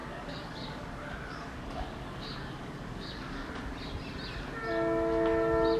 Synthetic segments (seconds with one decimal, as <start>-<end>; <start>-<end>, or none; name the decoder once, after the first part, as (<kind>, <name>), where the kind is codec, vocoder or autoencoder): 0.0-3.5 (codec, DAC)